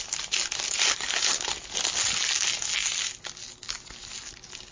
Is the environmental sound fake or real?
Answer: real